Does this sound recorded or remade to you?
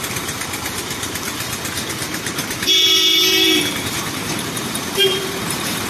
remade